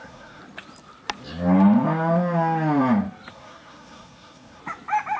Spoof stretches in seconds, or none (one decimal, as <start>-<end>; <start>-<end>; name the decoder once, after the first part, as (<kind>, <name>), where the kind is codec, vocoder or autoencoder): 0.0-0.4 (codec, SNAC); 3.3-4.6